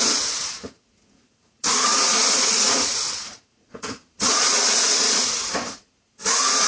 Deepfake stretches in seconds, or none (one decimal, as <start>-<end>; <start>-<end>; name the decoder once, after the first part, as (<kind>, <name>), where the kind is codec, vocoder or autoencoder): 0.0-6.7 (vocoder, Vocos)